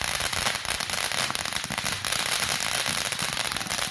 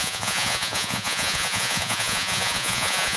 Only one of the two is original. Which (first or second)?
first